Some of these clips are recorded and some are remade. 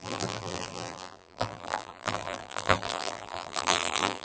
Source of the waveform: remade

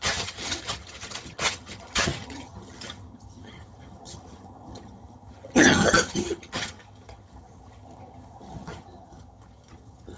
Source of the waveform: remade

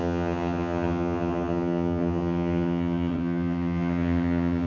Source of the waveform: remade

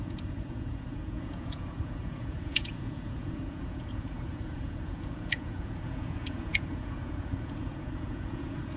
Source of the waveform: remade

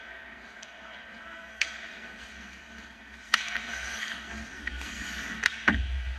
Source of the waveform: remade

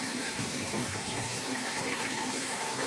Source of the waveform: remade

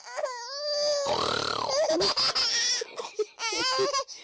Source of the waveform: recorded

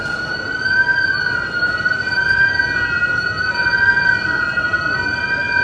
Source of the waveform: recorded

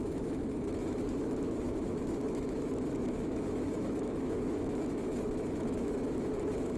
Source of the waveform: remade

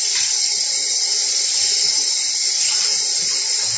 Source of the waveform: recorded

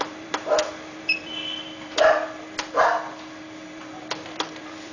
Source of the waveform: remade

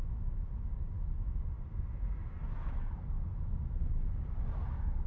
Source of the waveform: recorded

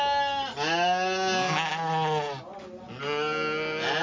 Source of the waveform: recorded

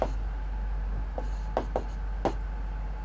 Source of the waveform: recorded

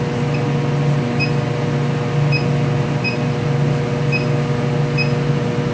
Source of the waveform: recorded